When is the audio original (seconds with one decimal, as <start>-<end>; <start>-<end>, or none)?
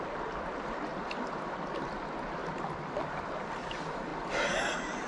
0.0-5.1